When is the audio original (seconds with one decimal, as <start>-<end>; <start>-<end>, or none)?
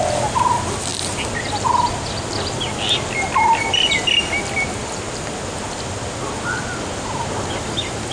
0.0-8.1